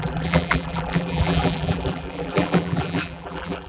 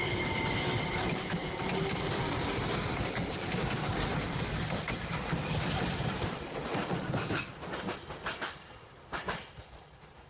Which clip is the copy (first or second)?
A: first